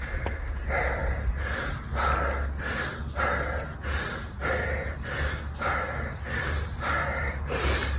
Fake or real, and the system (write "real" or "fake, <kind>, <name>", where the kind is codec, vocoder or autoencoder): real